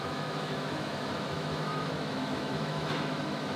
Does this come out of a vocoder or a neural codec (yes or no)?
yes